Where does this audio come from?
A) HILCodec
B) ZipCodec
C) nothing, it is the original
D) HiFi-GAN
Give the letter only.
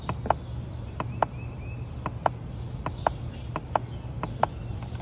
C